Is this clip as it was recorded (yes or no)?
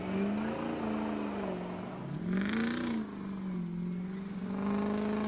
yes